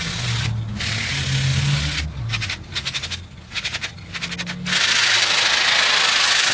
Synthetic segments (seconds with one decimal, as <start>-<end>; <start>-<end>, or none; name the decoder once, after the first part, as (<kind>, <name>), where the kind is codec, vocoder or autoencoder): none